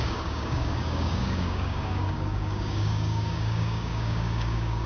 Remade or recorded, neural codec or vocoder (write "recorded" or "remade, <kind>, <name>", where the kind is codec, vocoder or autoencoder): remade, codec, DAC